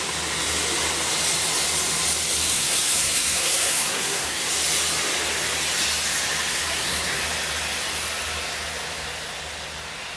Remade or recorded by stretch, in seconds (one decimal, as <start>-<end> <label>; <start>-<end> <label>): 0.0-2.4 recorded; 2.4-4.5 remade; 4.5-6.5 recorded; 6.5-7.2 remade; 7.2-10.2 recorded